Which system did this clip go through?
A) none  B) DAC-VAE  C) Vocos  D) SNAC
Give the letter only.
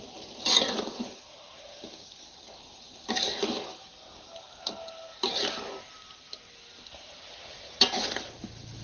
A